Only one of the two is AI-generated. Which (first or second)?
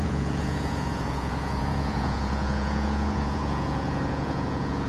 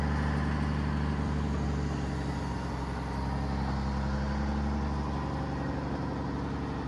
first